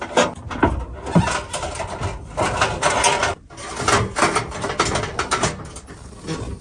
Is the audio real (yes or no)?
yes